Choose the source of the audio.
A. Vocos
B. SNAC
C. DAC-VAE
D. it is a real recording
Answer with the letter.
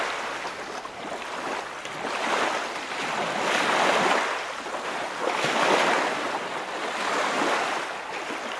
D